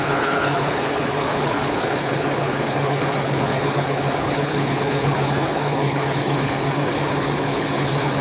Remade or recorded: remade